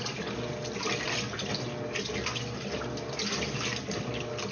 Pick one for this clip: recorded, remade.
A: recorded